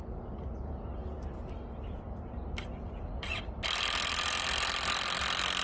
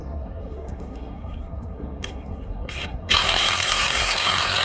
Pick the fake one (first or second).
second